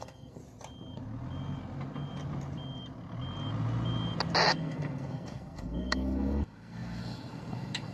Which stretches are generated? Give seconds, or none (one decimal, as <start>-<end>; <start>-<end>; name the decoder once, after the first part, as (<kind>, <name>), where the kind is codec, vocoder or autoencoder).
0.0-0.4 (codec, SNAC); 4.5-7.9